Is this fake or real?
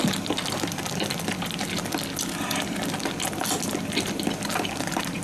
real